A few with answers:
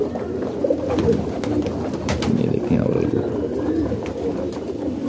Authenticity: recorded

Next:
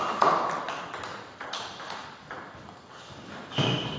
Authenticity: recorded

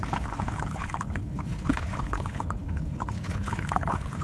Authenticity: remade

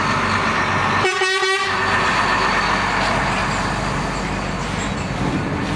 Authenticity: recorded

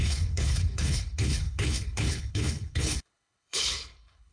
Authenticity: remade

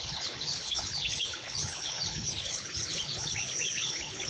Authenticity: remade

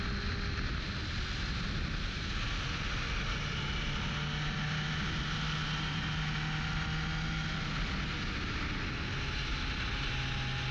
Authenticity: recorded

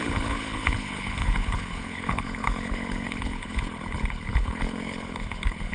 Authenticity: remade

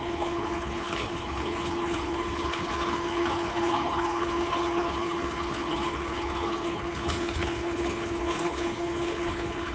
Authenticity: remade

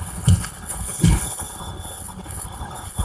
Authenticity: remade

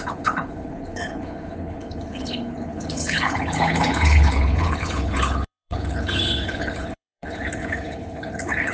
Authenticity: remade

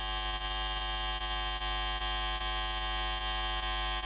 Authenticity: recorded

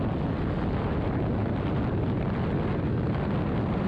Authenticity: recorded